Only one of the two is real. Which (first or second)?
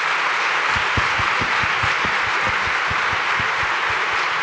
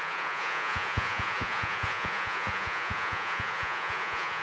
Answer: first